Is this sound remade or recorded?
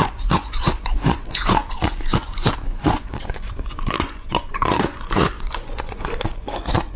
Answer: remade